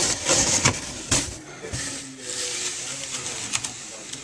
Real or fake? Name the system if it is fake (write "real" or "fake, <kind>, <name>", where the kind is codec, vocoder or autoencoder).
real